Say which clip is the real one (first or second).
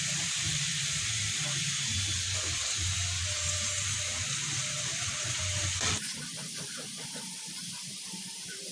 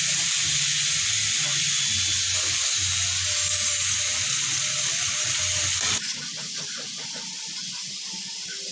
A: second